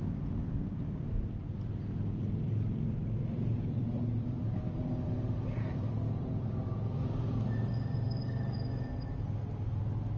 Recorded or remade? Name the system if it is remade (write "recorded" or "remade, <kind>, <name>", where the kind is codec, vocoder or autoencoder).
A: remade, vocoder, BigVGAN v2